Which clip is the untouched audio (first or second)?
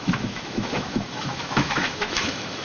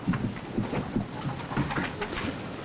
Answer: second